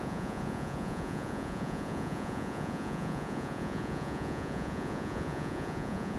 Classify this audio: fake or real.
fake